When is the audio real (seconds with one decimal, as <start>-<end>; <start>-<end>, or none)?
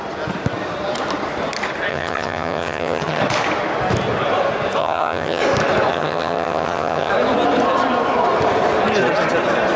0.0-1.9; 3.2-4.8; 5.4-5.9; 7.1-9.8